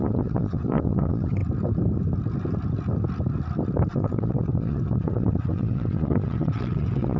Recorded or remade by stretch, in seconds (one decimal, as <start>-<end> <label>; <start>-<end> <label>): 0.0-1.4 remade; 1.4-3.9 recorded; 3.9-7.2 remade